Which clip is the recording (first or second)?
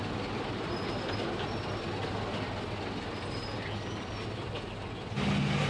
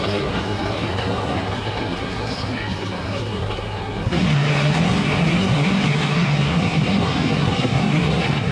first